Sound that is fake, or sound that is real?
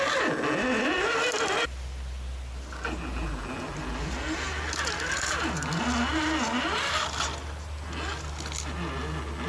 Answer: real